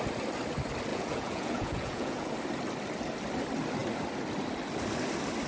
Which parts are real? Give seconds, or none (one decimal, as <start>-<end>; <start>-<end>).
0.0-0.9; 2.3-5.5